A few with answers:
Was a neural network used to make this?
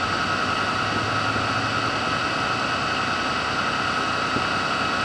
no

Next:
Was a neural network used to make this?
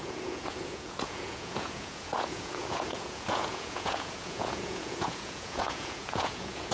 yes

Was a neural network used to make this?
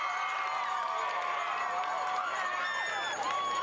no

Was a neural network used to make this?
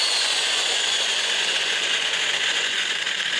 yes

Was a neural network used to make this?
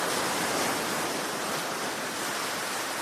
yes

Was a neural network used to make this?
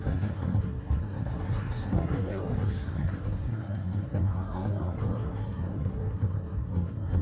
yes